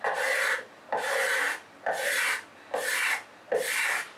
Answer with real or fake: real